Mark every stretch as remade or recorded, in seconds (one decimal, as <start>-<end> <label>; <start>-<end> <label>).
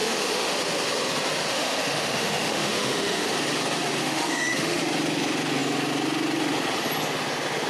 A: 0.0-0.6 remade; 0.6-1.5 recorded; 1.5-3.3 remade; 3.3-4.0 recorded; 4.0-4.8 remade; 4.8-7.7 recorded